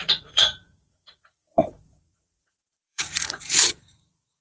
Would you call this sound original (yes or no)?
no